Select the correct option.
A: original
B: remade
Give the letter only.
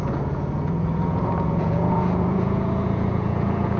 B